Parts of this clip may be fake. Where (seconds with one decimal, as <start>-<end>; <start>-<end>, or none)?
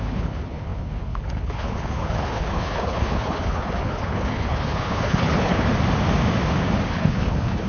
0.0-5.7; 6.9-7.7